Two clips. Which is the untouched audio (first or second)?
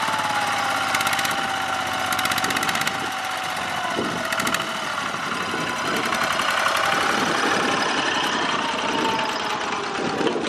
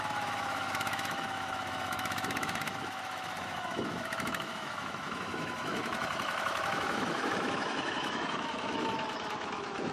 first